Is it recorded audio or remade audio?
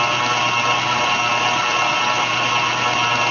recorded